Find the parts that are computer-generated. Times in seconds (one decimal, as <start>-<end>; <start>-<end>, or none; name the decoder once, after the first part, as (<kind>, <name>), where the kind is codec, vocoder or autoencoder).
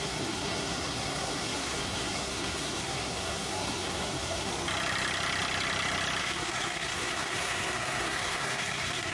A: 0.0-4.5 (codec, SNAC); 6.2-9.1